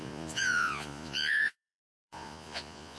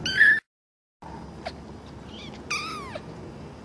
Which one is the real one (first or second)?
second